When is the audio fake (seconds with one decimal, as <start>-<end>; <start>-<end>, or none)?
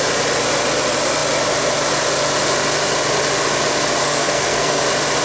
4.0-4.8